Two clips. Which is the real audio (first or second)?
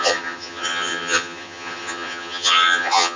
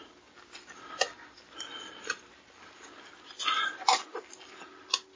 second